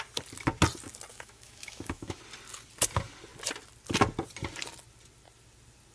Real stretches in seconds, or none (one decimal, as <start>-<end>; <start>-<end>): 0.0-1.1; 2.2-5.9

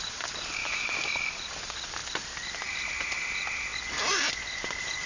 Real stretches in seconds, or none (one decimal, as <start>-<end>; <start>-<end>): 0.0-0.6; 1.3-5.1

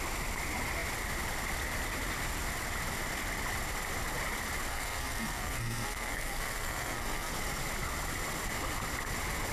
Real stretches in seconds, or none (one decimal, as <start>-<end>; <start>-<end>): 0.0-4.7; 7.3-9.5